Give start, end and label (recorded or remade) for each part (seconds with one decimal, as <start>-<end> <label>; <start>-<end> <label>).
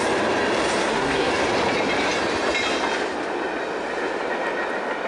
0.0-0.8 recorded; 0.8-1.3 remade; 1.3-5.1 recorded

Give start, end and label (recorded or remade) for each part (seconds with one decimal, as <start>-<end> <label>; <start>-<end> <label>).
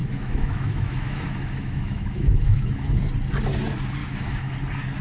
0.0-3.0 remade; 3.0-4.0 recorded; 4.0-4.5 remade; 4.5-5.0 recorded